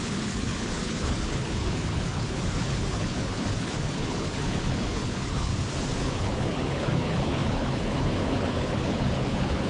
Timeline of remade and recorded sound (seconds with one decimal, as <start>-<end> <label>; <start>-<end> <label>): 0.0-5.5 remade; 5.5-6.0 recorded; 6.0-9.7 remade